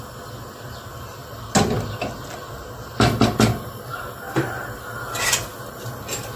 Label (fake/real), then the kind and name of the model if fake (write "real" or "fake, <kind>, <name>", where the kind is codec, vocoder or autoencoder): real